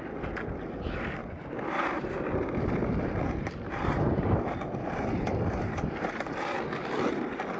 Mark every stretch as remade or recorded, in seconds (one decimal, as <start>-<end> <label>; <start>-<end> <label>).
0.0-1.2 recorded; 1.2-5.8 remade; 5.8-7.6 recorded